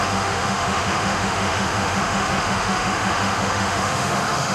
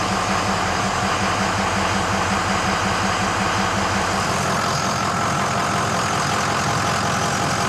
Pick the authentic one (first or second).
second